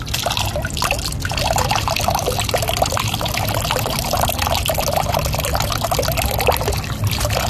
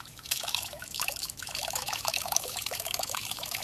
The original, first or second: first